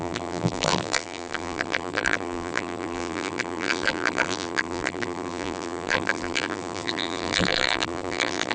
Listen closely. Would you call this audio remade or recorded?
remade